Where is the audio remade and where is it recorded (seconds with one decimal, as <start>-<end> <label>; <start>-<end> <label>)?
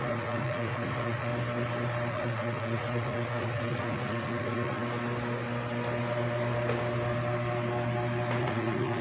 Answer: 0.0-1.3 remade; 1.3-2.1 recorded; 2.1-4.8 remade; 4.8-8.4 recorded; 8.4-9.0 remade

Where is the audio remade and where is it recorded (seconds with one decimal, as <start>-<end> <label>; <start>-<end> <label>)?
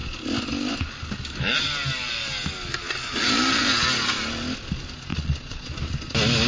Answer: 0.0-5.1 recorded; 5.1-5.7 remade; 5.7-6.5 recorded